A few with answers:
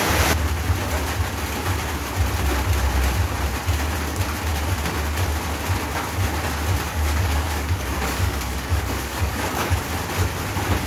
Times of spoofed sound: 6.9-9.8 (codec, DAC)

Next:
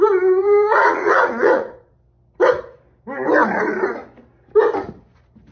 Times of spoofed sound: 0.4-1.9 (vocoder, Vocos)

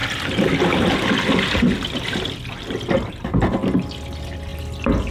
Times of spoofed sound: none